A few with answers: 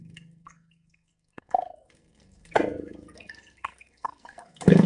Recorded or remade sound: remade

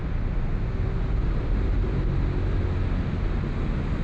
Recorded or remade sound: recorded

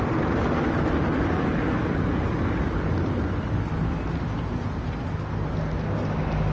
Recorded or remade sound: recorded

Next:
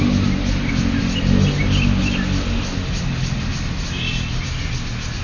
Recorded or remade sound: recorded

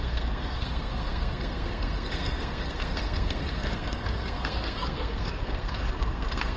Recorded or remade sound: remade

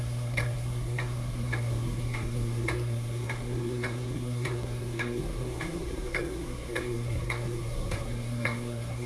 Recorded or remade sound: remade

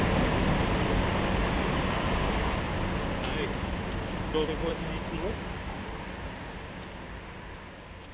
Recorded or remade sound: recorded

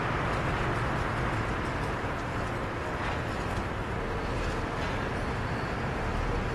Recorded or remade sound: recorded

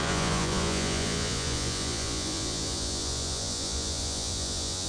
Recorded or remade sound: remade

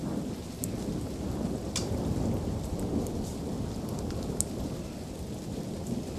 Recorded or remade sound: recorded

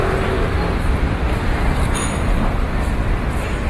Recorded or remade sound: remade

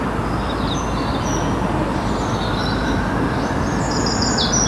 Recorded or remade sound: recorded